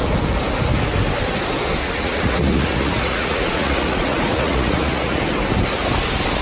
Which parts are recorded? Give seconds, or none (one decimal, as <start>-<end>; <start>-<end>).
0.0-1.8; 5.2-6.4